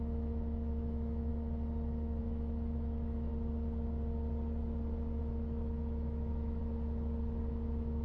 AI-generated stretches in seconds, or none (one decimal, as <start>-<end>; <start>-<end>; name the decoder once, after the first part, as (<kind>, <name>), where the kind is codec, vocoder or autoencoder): 0.0-1.3 (autoencoder, DAC-VAE); 2.2-3.3; 5.2-6.6; 7.5-8.0